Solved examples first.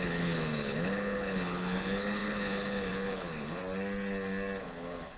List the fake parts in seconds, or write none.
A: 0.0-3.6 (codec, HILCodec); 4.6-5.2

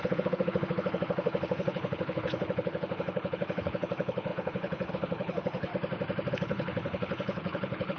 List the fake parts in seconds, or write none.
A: 0.0-5.7 (codec, HILCodec); 6.3-8.0

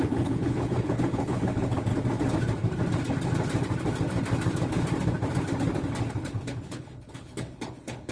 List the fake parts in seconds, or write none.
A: 0.0-1.9 (codec, HILCodec); 6.1-8.1

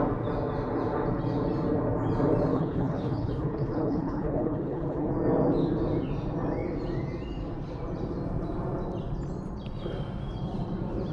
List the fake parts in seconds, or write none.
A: 2.5-5.1 (codec, HILCodec)

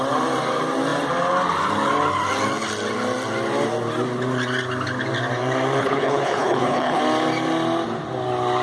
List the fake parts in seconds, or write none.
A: 5.8-7.0 (codec, HILCodec)

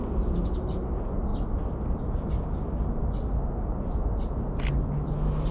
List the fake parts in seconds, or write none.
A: none

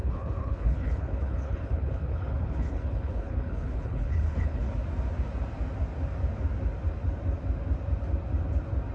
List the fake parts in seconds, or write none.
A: 0.0-4.7 (codec, HILCodec)